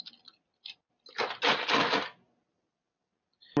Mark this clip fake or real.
real